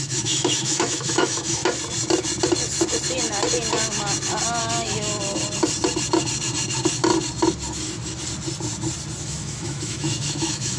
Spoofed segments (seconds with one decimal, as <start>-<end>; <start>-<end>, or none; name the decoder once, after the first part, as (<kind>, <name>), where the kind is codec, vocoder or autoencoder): 0.0-1.6 (autoencoder, DAC-VAE); 4.6-5.1; 9.2-10.8